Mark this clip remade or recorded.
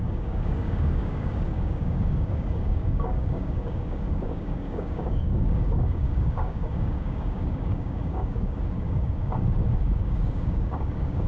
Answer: remade